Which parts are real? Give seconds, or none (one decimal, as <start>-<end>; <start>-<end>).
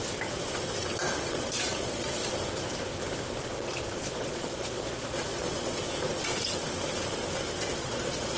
0.0-1.2; 2.2-3.6; 5.8-7.7